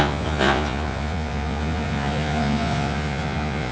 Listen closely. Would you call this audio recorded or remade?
remade